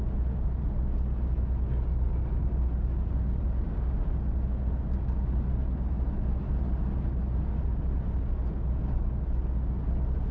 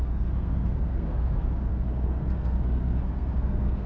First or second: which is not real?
second